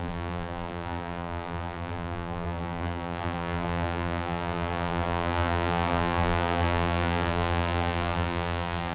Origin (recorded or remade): remade